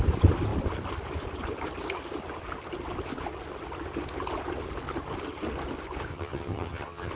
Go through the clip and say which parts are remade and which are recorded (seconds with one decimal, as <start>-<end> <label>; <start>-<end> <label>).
0.0-6.1 recorded; 6.1-7.1 remade